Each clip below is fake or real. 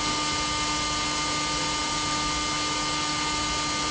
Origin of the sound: real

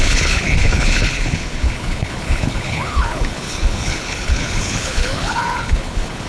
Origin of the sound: fake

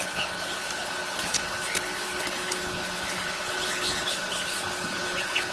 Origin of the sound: fake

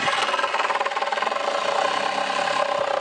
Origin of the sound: real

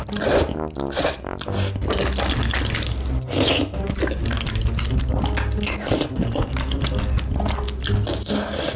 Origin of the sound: real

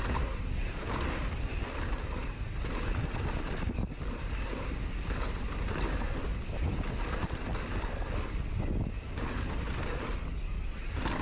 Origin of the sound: real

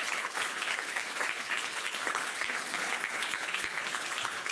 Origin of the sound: fake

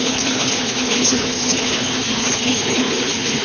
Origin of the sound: fake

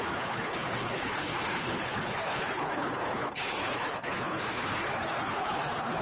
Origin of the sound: fake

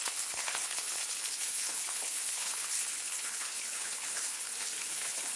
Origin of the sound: fake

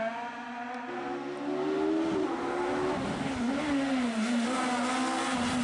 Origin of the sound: real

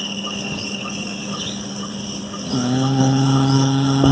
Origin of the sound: fake